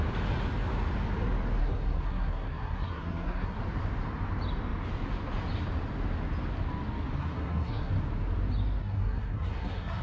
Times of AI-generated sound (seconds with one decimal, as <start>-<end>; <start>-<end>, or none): 1.6-3.6; 7.2-7.9; 8.8-10.0